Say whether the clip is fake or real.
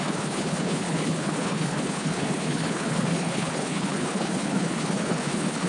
fake